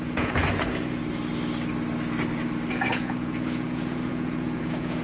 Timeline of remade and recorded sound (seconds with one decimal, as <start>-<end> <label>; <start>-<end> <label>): 0.0-1.0 remade; 1.0-2.7 recorded; 2.7-5.0 remade